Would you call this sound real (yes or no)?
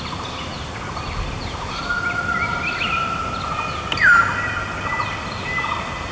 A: yes